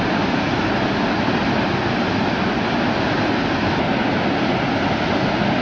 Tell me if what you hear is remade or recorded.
recorded